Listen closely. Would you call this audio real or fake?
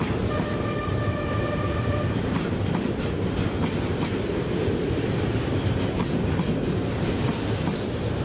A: fake